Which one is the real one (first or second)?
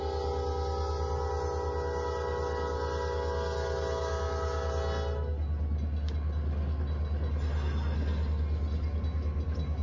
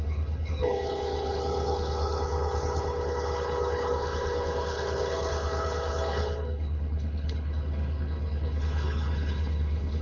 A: first